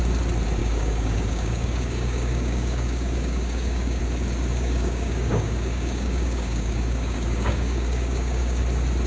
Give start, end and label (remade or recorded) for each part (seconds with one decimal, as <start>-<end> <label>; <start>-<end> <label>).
0.0-0.6 recorded; 0.6-4.0 remade; 4.0-4.5 recorded; 4.5-8.6 remade; 8.6-9.1 recorded